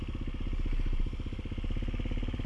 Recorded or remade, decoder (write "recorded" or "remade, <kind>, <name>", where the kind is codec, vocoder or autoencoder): recorded